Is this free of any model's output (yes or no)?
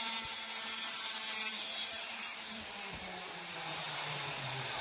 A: no